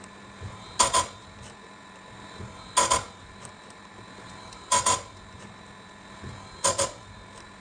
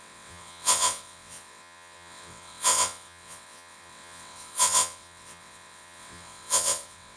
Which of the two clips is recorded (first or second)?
first